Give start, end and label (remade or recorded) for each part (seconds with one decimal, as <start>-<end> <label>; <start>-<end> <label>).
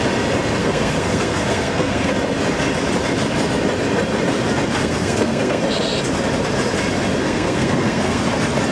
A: 0.0-0.6 recorded; 0.6-2.1 remade; 2.1-4.8 recorded; 4.8-5.6 remade; 5.6-7.2 recorded; 7.2-8.2 remade; 8.2-8.7 recorded